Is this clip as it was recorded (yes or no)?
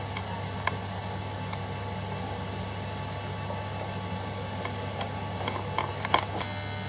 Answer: yes